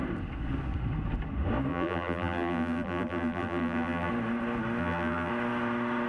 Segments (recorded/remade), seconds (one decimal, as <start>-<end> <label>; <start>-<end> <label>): 0.0-1.7 recorded; 1.7-4.1 remade; 4.1-4.8 recorded; 4.8-5.3 remade; 5.3-6.1 recorded